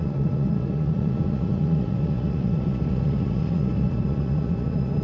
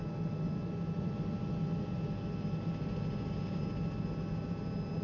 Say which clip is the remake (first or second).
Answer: first